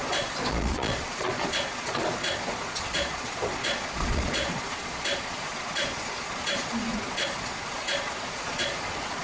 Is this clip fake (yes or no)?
yes